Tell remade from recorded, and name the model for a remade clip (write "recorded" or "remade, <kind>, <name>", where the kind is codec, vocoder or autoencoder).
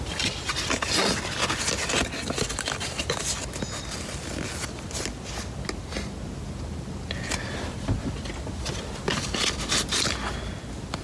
recorded